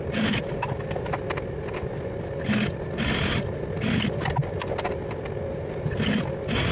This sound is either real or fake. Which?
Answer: real